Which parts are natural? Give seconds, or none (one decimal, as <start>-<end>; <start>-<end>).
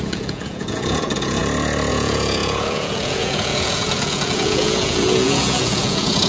1.4-1.9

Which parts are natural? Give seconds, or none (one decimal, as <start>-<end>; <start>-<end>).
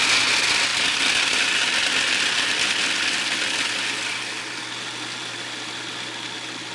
0.0-6.7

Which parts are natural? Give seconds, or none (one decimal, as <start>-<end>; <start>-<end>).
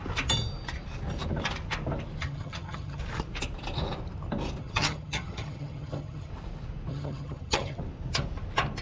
0.0-2.2; 3.0-4.6; 6.3-6.9; 7.8-8.8